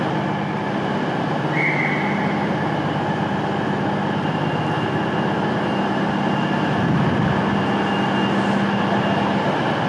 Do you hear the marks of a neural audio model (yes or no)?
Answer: no